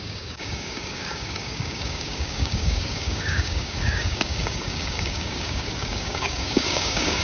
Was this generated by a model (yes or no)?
yes